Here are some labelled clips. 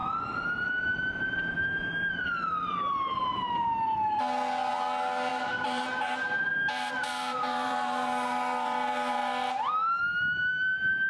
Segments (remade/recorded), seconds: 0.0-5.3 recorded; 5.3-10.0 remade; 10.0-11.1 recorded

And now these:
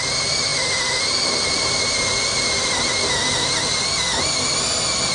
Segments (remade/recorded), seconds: 0.0-5.1 recorded

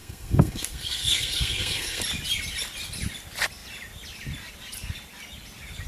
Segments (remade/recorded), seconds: 0.0-2.0 remade; 2.0-5.9 recorded

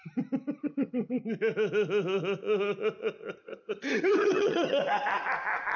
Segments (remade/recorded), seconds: 0.0-0.6 recorded; 0.6-1.2 remade; 1.2-3.4 recorded; 3.4-4.8 remade; 4.8-5.8 recorded

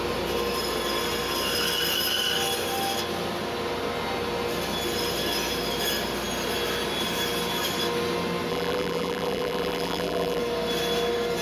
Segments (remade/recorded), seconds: 0.0-8.5 recorded; 8.5-10.4 remade; 10.4-11.4 recorded

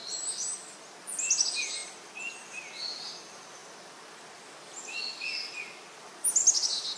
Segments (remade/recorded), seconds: 0.0-7.0 recorded